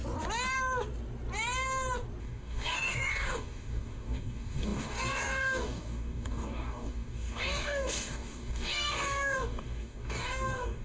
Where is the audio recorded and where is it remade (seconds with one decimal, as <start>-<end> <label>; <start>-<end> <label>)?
0.0-2.2 recorded; 2.2-10.8 remade